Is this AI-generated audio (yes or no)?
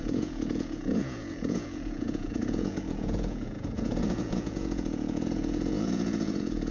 yes